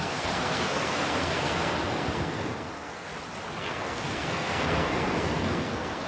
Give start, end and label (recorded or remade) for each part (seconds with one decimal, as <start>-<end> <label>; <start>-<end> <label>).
0.0-3.1 remade; 3.1-3.6 recorded; 3.6-6.1 remade